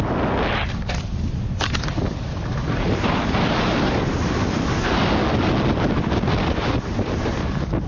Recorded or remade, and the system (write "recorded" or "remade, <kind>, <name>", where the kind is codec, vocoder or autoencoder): recorded